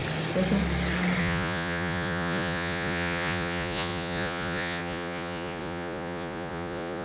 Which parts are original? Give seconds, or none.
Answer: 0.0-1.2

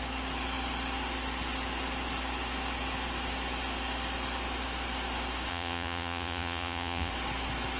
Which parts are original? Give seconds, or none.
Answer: 0.0-5.5; 7.1-7.8